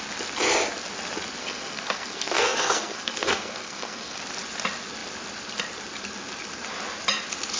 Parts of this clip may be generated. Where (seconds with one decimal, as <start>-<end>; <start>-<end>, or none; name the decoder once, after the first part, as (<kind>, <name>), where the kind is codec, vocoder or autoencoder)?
1.4-4.2 (codec, SNAC)